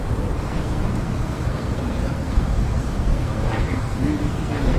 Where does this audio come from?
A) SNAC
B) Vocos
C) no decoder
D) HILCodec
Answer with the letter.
A